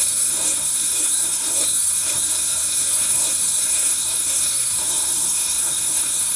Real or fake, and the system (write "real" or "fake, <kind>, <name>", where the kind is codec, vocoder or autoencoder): fake, codec, SNAC